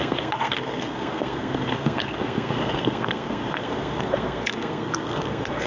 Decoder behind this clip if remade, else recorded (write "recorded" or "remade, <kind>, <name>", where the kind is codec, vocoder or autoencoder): remade, codec, SNAC